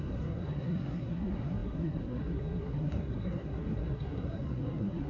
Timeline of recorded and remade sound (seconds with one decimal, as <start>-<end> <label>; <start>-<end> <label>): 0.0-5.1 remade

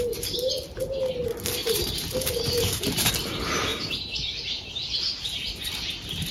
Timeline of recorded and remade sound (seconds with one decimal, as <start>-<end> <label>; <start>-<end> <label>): 0.0-1.6 recorded; 1.6-3.1 remade; 3.1-3.7 recorded; 3.7-4.7 remade; 4.7-6.3 recorded

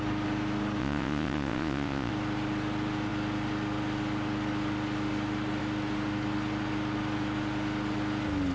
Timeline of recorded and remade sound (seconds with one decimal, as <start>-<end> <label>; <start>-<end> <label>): 0.0-0.8 recorded; 0.8-2.1 remade; 2.1-8.5 recorded